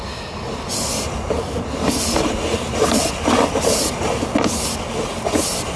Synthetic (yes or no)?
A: no